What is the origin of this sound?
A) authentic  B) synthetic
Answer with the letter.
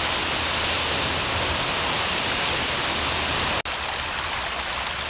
A